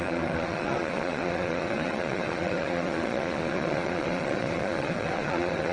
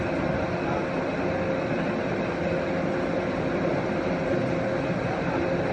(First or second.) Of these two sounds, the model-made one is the first